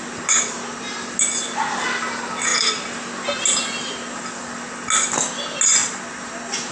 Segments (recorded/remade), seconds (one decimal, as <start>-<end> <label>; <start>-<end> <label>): 0.0-6.7 recorded